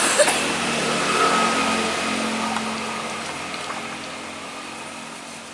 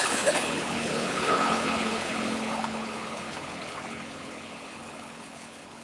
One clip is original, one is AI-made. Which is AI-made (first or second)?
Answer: second